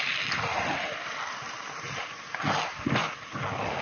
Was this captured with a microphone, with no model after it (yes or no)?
yes